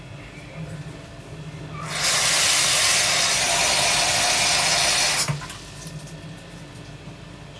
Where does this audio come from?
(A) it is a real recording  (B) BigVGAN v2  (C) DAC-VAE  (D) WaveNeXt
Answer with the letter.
A